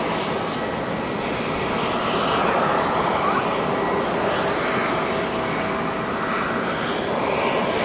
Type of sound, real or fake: real